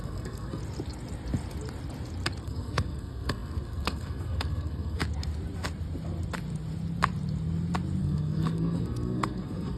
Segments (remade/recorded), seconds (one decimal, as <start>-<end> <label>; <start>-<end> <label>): 0.0-0.6 remade; 0.6-2.4 recorded; 2.4-5.0 remade; 5.0-8.0 recorded; 8.0-9.8 remade